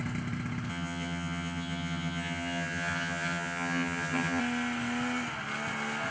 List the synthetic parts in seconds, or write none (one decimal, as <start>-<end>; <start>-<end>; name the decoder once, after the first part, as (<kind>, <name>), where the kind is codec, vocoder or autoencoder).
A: 0.7-4.4 (vocoder, HiFi-GAN)